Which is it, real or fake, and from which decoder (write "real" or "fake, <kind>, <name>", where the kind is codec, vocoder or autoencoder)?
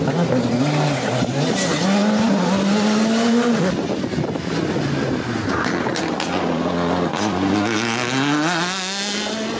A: real